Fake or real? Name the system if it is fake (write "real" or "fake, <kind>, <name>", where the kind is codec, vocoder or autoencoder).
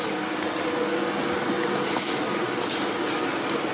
real